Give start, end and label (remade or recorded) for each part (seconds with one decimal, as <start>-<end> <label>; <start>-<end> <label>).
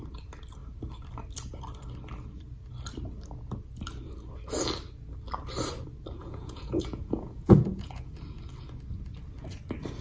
0.0-6.2 recorded; 6.2-8.1 remade; 8.1-10.0 recorded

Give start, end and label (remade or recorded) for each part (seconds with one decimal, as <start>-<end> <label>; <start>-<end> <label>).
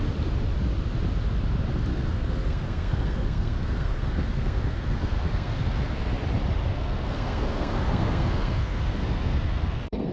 0.0-1.9 recorded; 1.9-6.1 remade; 6.1-6.7 recorded; 6.7-10.1 remade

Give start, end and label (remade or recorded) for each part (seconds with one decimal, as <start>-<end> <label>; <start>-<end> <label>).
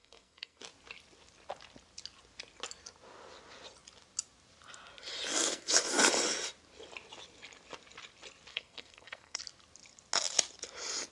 0.0-0.6 remade; 0.6-5.3 recorded; 5.3-6.1 remade; 6.1-8.5 recorded; 8.5-9.4 remade; 9.4-11.1 recorded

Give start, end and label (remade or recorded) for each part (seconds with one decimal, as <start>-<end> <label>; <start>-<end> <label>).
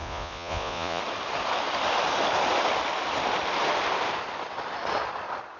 0.0-1.0 remade; 1.0-5.6 recorded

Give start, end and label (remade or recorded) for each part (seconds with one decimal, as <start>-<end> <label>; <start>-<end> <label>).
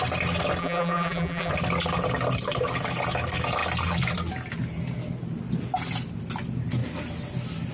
0.0-0.6 recorded; 0.6-1.5 remade; 1.5-7.7 recorded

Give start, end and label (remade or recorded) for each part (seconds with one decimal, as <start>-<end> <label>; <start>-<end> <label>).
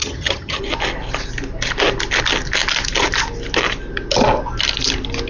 0.0-0.6 remade; 0.6-5.3 recorded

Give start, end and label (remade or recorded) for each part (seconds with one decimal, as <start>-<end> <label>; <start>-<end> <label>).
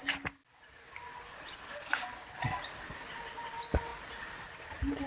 0.0-5.1 recorded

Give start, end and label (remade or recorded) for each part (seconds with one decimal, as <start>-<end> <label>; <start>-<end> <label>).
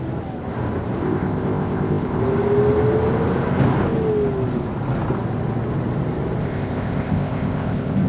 0.0-1.0 recorded; 1.0-2.2 remade; 2.2-6.4 recorded; 6.4-8.1 remade